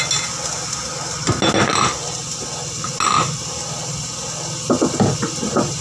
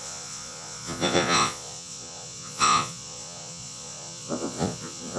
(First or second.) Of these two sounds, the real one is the first